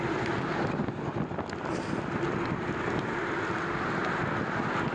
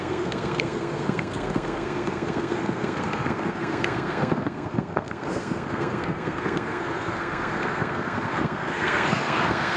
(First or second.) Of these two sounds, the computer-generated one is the second